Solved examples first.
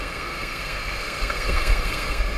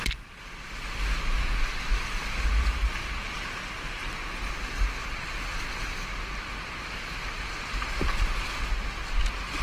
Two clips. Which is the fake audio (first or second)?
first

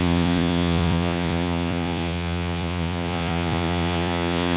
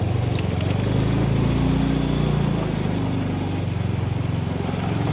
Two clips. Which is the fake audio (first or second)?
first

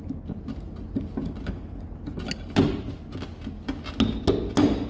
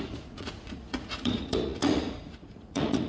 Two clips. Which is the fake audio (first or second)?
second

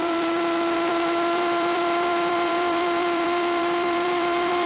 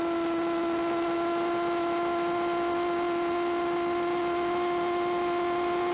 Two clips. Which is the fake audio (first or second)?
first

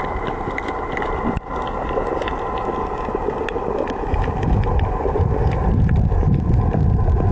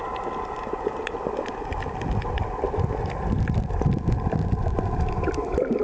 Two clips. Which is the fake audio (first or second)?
second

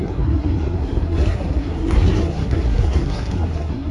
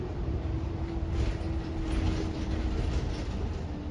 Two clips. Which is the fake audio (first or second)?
first